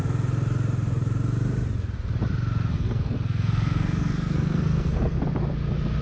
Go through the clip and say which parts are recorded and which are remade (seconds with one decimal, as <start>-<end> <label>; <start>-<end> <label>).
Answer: 0.0-2.7 recorded; 2.7-5.2 remade; 5.2-6.0 recorded